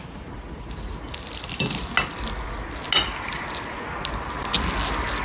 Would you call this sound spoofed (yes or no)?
no